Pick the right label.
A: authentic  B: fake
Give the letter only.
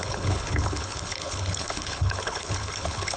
B